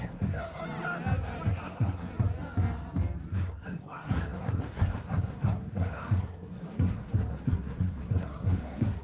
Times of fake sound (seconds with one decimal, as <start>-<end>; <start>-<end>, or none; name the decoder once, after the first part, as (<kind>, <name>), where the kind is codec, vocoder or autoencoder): 0.0-0.6 (codec, SNAC); 1.5-2.1; 3.3-9.0